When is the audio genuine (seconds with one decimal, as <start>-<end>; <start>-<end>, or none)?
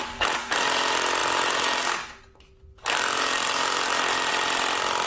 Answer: 0.0-5.1